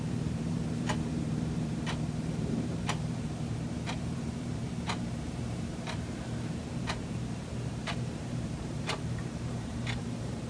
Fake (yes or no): yes